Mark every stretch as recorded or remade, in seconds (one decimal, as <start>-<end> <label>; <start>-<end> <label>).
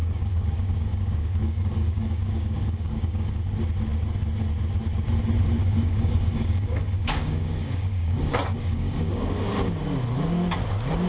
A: 0.0-3.4 remade; 3.4-5.6 recorded; 5.6-9.5 remade; 9.5-11.1 recorded